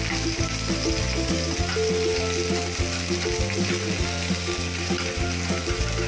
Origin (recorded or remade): recorded